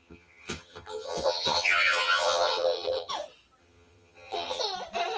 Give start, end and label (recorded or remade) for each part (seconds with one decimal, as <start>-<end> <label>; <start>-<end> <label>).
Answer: 0.0-3.1 remade; 3.1-3.6 recorded; 3.6-4.6 remade; 4.6-5.2 recorded